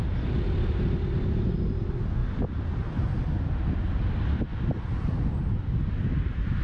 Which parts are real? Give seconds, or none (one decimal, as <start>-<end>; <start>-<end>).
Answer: 0.0-6.6